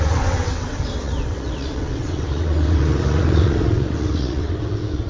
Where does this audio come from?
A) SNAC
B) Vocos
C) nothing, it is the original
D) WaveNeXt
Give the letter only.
D